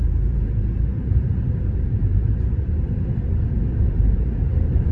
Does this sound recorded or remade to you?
remade